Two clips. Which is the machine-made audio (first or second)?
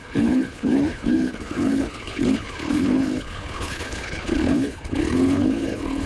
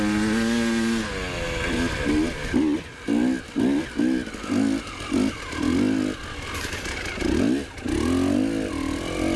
first